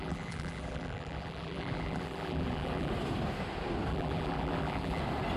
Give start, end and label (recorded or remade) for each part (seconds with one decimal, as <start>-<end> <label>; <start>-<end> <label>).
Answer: 0.0-2.9 remade; 2.9-3.9 recorded; 3.9-5.0 remade; 5.0-5.4 recorded